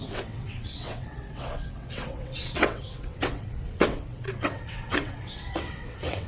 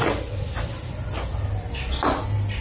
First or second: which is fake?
first